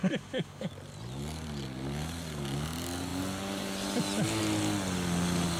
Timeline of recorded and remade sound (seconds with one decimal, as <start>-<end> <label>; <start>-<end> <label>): 0.0-0.7 remade; 0.7-5.6 recorded